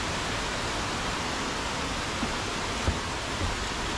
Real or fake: real